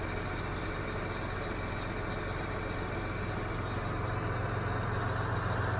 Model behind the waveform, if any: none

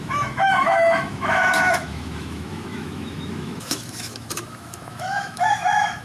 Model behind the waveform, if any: autoencoder, DAC-VAE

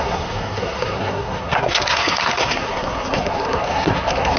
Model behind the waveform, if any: codec, SNAC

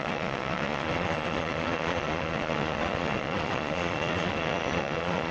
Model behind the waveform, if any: vocoder, Vocos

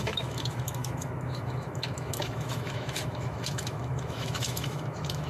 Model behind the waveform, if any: autoencoder, DAC-VAE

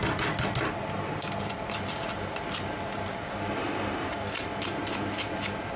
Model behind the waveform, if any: none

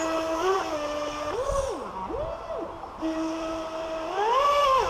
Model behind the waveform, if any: none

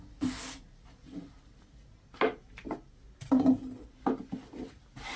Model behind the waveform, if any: none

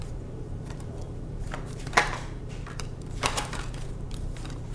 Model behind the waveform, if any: vocoder, BigVGAN v2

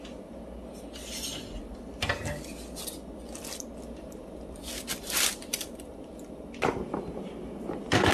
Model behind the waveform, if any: none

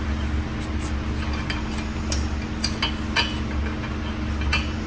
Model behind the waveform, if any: none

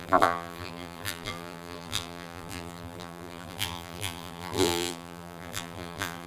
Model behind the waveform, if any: vocoder, BigVGAN v2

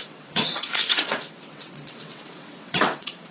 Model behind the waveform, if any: vocoder, WaveNeXt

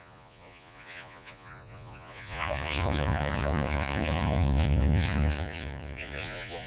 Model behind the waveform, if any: vocoder, Vocos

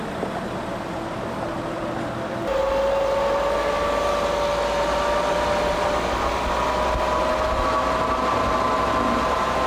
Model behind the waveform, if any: none